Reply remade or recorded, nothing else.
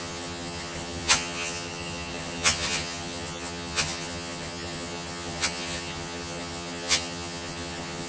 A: remade